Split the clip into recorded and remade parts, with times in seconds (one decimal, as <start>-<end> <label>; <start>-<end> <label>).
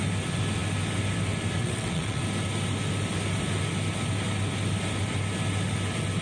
0.0-1.6 recorded; 1.6-2.2 remade; 2.2-6.2 recorded